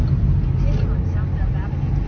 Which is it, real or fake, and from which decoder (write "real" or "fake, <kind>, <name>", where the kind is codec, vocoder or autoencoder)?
real